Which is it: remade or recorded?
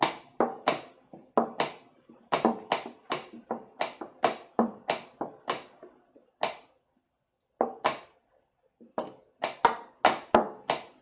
recorded